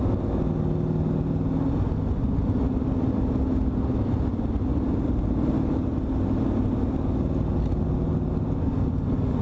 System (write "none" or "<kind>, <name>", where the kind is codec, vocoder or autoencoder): none